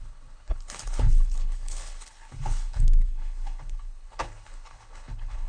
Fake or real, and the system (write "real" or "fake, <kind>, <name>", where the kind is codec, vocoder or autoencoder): fake, codec, HILCodec